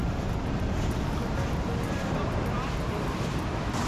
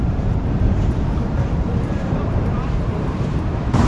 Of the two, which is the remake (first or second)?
second